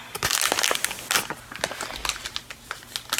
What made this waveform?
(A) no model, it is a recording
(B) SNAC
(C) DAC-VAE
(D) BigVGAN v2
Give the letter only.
A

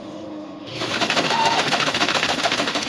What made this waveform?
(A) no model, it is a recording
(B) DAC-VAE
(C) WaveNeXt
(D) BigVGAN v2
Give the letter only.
B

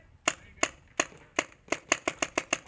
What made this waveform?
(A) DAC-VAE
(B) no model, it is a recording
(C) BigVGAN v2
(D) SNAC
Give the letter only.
B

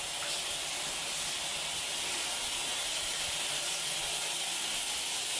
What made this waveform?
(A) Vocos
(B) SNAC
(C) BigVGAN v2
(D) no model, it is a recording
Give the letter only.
D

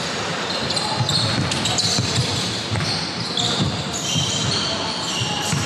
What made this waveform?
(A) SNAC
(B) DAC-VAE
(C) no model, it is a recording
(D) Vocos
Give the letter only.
C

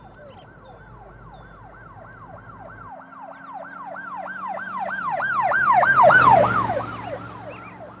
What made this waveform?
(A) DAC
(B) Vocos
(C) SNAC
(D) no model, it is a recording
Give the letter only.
D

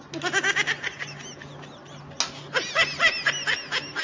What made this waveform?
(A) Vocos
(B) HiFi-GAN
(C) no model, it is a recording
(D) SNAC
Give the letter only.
C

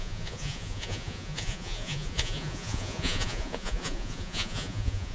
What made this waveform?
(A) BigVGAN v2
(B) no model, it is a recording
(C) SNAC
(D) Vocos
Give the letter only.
D